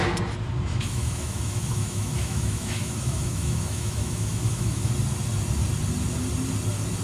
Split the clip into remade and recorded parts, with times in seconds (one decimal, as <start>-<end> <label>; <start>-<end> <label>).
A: 0.0-0.7 recorded; 0.7-4.9 remade; 4.9-7.0 recorded

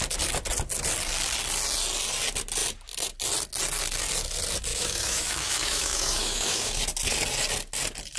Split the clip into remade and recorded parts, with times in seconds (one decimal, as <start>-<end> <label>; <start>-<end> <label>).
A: 0.0-4.7 recorded; 4.7-6.7 remade; 6.7-8.2 recorded